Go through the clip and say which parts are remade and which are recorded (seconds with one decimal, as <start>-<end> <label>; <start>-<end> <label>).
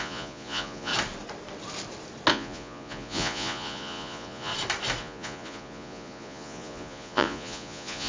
0.0-0.9 remade; 0.9-2.3 recorded; 2.3-4.5 remade; 4.5-5.0 recorded; 5.0-8.1 remade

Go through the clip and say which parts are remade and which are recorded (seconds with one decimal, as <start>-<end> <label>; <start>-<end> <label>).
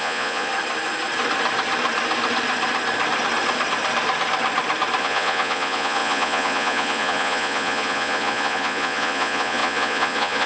0.0-0.5 remade; 0.5-5.0 recorded; 5.0-10.5 remade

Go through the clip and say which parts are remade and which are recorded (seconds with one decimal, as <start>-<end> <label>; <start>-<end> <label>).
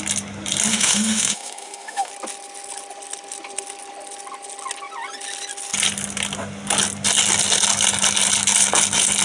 0.0-0.7 recorded; 0.7-2.1 remade; 2.1-9.2 recorded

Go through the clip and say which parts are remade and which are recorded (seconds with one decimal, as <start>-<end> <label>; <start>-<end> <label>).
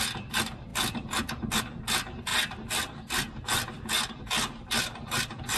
0.0-5.6 recorded